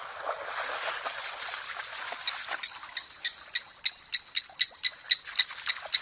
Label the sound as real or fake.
real